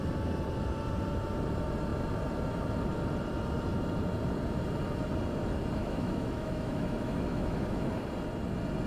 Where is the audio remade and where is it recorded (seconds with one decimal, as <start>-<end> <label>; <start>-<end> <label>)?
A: 0.0-5.8 recorded; 5.8-7.9 remade; 7.9-8.9 recorded